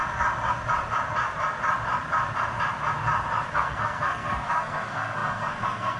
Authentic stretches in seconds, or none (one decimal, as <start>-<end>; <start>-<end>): 0.0-3.5